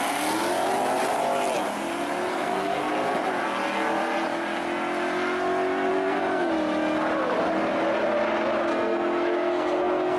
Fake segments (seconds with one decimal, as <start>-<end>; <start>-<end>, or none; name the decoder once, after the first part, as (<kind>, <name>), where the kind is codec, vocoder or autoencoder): 2.3-2.9 (codec, SNAC); 5.9-6.5; 8.7-10.2